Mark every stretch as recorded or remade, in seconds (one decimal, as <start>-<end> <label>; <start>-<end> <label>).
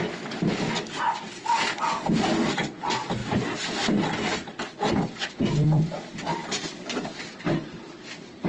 0.0-3.2 remade; 3.2-4.9 recorded; 4.9-8.5 remade